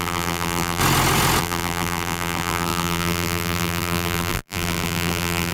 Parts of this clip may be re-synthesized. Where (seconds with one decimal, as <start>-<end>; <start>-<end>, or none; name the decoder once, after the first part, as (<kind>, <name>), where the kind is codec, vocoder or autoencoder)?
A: 0.0-0.8 (vocoder, BigVGAN v2); 1.4-5.5